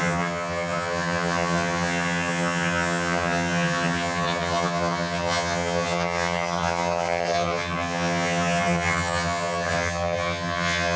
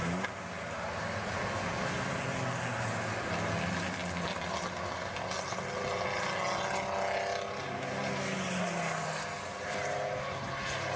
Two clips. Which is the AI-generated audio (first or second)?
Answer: first